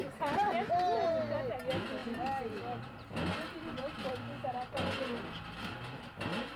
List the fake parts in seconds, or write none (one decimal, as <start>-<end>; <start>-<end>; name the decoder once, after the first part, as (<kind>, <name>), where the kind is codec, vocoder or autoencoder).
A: none